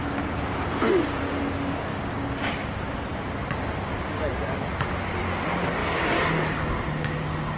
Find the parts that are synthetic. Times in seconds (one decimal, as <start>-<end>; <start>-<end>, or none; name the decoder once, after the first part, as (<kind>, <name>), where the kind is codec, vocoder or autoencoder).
1.9-3.7 (vocoder, BigVGAN v2); 4.3-5.1